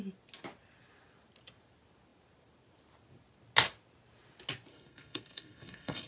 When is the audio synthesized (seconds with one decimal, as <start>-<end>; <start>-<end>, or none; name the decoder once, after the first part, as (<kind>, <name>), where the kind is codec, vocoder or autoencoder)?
4.7-6.1 (codec, SNAC)